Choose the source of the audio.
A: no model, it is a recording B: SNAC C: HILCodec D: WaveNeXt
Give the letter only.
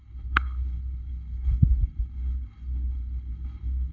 C